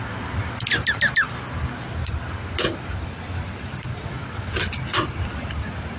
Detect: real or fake real